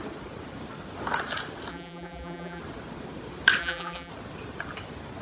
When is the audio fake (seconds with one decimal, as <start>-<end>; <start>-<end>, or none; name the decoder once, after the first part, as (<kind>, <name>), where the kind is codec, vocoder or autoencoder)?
1.7-2.6 (vocoder, BigVGAN v2); 3.6-4.1